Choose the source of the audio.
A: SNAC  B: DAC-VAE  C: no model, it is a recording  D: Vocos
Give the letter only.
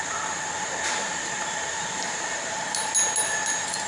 C